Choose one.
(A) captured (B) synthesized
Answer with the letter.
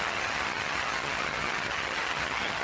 B